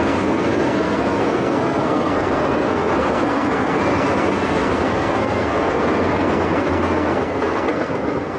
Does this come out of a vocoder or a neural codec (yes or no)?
yes